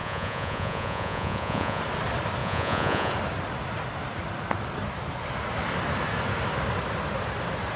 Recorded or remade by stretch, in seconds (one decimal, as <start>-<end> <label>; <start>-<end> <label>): 0.0-1.8 remade; 1.8-2.4 recorded; 2.4-3.1 remade; 3.1-7.8 recorded